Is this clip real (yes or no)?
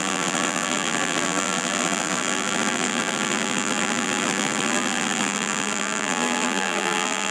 no